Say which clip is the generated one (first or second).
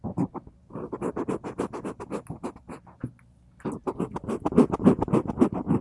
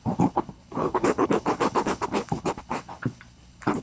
second